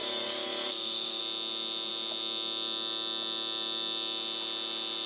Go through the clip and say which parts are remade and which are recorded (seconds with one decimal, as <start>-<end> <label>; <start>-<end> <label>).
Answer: 0.0-1.2 remade; 1.2-5.1 recorded